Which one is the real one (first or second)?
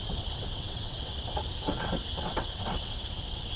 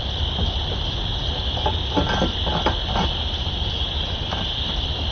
second